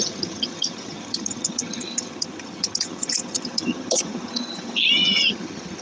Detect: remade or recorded remade